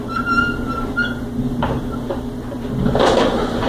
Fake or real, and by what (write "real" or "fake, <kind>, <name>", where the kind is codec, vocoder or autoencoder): fake, vocoder, BigVGAN v2